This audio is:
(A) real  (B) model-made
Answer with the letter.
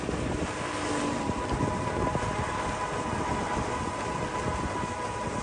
A